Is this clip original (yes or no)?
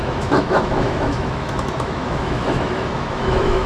no